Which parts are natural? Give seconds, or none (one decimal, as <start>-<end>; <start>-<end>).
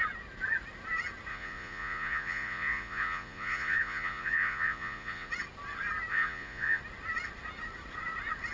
0.0-1.3; 5.3-6.1; 6.8-8.5